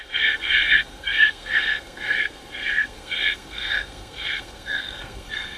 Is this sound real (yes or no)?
no